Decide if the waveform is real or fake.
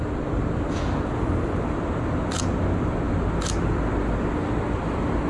real